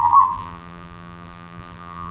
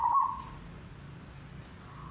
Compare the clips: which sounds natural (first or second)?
second